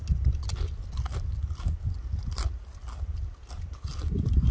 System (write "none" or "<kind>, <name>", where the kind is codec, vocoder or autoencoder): none